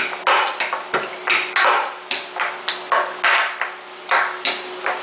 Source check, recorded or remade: recorded